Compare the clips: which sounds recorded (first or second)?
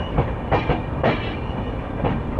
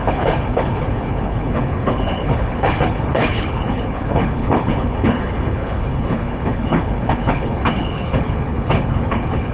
first